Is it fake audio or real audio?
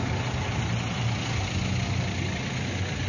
real